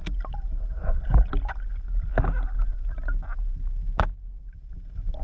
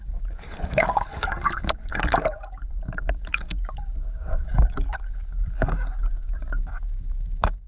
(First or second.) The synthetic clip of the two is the second